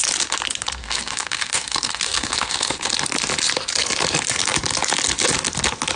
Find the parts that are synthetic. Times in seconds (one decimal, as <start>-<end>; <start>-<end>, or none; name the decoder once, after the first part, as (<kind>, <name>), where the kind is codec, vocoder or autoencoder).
0.8-2.9 (codec, SNAC)